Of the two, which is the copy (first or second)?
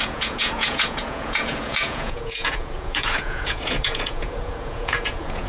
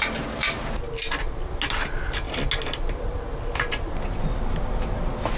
first